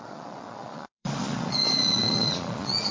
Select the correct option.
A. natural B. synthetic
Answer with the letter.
B